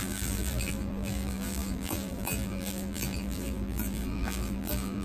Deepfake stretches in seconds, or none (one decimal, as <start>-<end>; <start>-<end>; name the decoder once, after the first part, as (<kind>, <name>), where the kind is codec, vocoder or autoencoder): 0.0-5.0 (vocoder, BigVGAN v2)